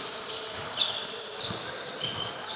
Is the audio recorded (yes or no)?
yes